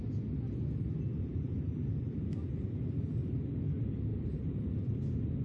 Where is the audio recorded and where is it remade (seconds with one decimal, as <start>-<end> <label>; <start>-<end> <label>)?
0.0-1.1 recorded; 1.1-3.3 remade; 3.3-4.1 recorded; 4.1-4.8 remade; 4.8-5.4 recorded